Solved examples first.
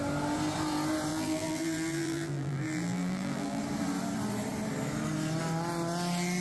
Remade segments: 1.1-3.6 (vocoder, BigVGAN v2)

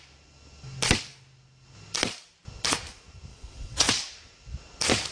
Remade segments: 3.3-3.9 (vocoder, WaveNeXt)